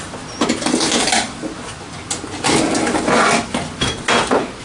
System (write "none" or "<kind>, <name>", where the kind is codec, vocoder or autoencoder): none